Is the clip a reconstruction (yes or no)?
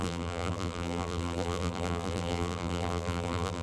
yes